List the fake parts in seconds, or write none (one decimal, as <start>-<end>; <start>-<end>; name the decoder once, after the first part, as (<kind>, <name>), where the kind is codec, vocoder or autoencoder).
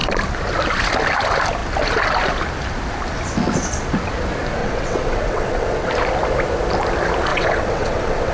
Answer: 4.6-5.9 (vocoder, WaveNeXt); 7.3-8.3